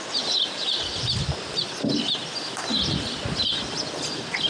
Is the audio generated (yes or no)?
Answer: no